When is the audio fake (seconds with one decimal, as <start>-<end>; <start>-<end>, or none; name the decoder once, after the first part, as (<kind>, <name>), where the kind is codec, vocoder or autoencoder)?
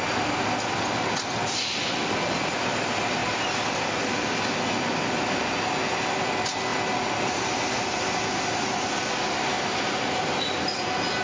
none